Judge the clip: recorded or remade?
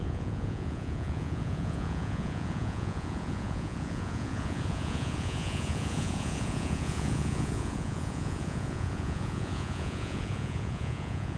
remade